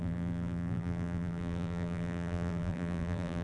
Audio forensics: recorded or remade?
remade